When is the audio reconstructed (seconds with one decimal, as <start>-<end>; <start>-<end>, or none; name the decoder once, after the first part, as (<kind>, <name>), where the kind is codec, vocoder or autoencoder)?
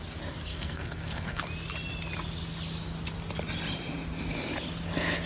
0.5-1.4 (codec, SNAC)